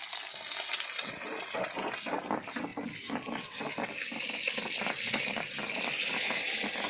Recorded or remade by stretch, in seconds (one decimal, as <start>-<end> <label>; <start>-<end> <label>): 0.0-6.9 recorded